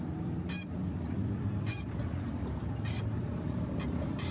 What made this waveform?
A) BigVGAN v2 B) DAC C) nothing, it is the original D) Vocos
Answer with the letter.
A